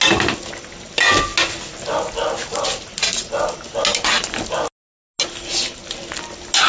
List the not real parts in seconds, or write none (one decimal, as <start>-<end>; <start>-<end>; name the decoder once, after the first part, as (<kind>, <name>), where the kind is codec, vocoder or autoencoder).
none